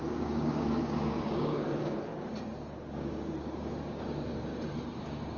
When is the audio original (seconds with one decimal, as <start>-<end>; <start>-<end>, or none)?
2.1-2.9; 4.5-5.0